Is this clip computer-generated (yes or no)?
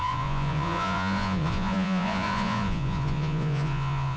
yes